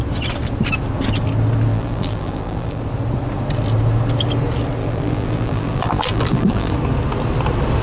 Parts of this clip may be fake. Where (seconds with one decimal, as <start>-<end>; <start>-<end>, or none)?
1.7-2.8; 4.8-6.7